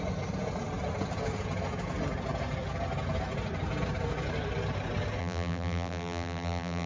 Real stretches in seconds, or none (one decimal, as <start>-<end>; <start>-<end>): 0.0-5.2

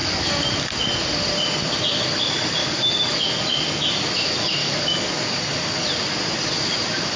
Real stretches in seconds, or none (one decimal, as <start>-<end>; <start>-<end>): 0.6-2.6; 3.2-4.6; 5.4-7.2

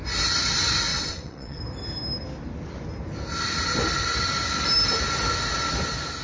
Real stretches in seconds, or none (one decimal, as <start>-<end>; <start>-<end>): 0.0-0.9; 1.6-6.2

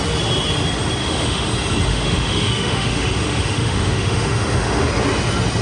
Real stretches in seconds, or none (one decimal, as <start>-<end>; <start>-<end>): 0.0-1.0; 1.5-1.9; 4.9-5.6

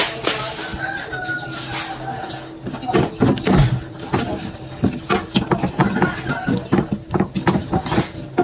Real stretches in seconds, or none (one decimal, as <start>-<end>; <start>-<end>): 0.0-8.4

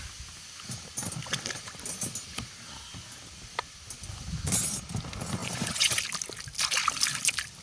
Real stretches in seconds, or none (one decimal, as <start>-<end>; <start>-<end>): 0.0-5.4; 6.0-7.6